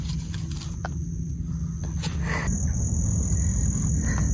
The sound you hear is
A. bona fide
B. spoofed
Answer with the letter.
A